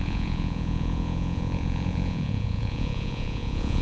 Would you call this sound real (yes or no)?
no